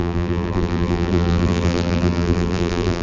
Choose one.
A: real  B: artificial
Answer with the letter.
B